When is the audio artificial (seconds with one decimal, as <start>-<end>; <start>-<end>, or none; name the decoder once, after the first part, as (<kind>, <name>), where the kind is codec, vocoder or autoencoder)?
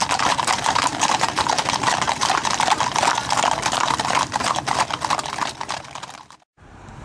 0.9-1.4 (vocoder, BigVGAN v2)